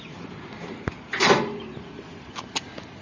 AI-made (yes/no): no